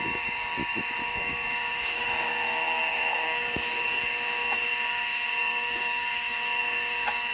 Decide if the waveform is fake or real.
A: fake